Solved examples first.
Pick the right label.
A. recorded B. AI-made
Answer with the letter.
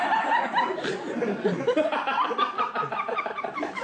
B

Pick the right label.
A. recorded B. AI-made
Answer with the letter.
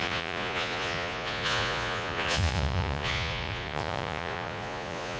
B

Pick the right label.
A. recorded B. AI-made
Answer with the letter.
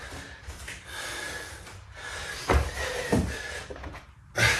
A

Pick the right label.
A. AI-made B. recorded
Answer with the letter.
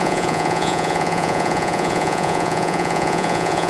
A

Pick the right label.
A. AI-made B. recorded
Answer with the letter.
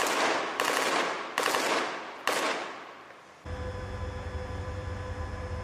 B